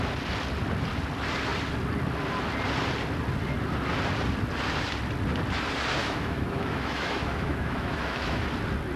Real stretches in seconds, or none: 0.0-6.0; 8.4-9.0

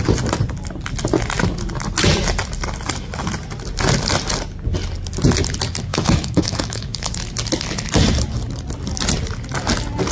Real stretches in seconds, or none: 0.0-5.9; 7.1-10.1

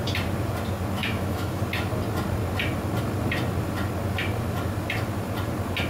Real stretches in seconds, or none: 0.0-1.0; 1.6-5.9

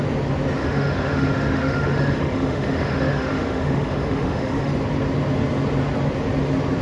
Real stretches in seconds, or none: 0.0-0.6; 4.7-6.8

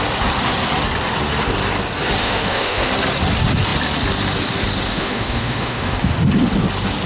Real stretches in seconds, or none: 0.0-2.2; 2.9-4.9; 6.0-7.1

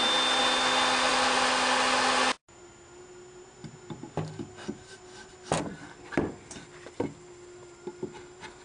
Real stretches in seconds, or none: 0.0-8.6